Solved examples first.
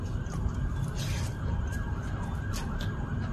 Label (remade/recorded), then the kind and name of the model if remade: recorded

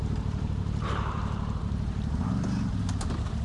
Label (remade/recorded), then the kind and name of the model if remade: remade, vocoder, BigVGAN v2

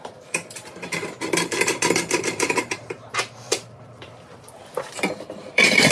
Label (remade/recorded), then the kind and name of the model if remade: remade, vocoder, BigVGAN v2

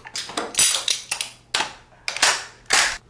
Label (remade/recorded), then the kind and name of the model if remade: recorded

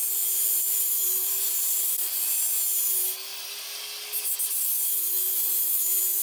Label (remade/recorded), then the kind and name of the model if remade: recorded